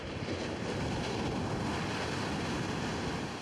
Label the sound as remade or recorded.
recorded